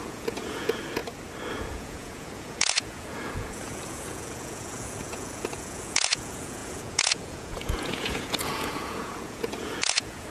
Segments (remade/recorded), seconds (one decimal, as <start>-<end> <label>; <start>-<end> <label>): 0.0-1.0 remade; 1.0-1.5 recorded; 1.5-10.3 remade